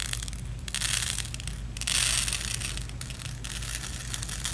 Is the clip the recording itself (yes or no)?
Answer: yes